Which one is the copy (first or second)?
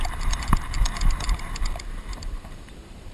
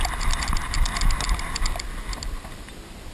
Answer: first